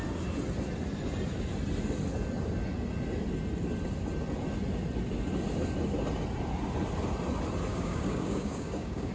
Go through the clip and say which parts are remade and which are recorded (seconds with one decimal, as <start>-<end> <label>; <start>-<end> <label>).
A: 0.0-7.7 recorded; 7.7-9.1 remade